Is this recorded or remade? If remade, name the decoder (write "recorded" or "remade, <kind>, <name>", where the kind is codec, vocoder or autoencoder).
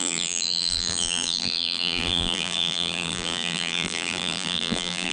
remade, vocoder, BigVGAN v2